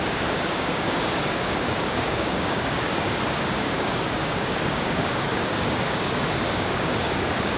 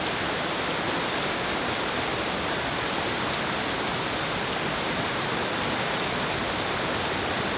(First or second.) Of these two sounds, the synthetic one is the first